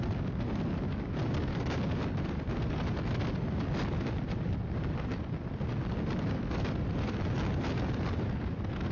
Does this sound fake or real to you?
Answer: real